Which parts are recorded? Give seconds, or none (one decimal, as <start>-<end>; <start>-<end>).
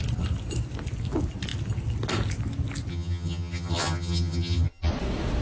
0.0-2.9; 4.9-5.4